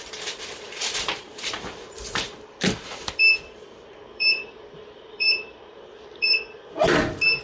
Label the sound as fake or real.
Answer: fake